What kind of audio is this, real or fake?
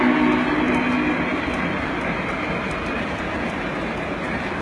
real